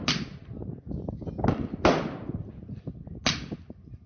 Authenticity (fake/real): real